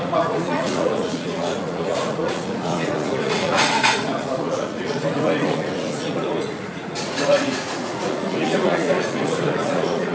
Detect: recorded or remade remade